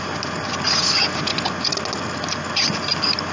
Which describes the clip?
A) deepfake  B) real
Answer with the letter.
B